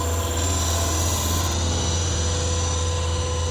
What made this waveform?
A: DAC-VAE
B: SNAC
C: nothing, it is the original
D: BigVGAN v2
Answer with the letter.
C